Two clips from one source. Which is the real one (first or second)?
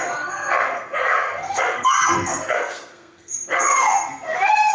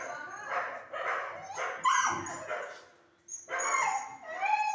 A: second